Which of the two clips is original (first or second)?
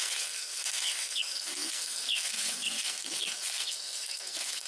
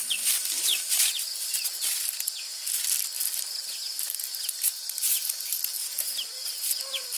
second